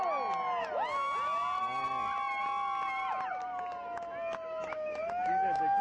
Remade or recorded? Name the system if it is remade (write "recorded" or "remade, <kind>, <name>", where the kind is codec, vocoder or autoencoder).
recorded